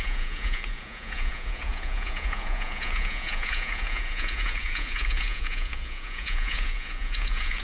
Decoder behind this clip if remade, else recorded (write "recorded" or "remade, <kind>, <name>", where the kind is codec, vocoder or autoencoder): remade, vocoder, Vocos